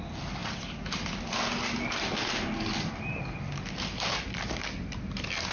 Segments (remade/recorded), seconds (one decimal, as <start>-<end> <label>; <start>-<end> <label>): 0.0-5.5 recorded